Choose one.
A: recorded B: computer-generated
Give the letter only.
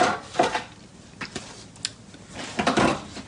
A